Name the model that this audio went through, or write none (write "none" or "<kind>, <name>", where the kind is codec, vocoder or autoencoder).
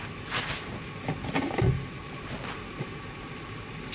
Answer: none